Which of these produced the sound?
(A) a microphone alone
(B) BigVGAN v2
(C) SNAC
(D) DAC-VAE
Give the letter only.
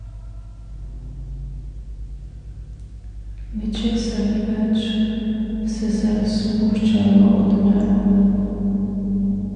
A